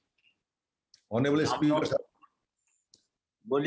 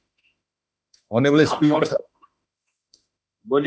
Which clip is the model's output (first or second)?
second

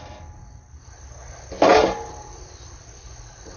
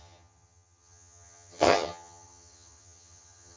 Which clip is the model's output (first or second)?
second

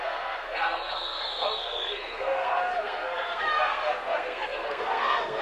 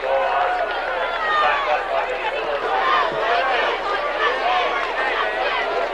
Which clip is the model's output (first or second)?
first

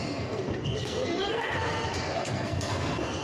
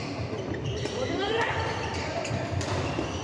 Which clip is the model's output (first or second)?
first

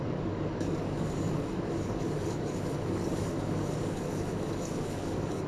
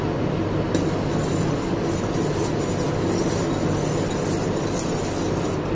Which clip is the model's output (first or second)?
first